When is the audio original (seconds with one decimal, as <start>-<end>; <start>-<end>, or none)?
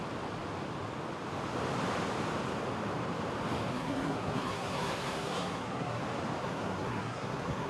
0.0-3.7; 6.0-6.4